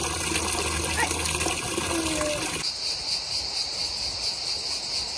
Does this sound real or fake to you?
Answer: real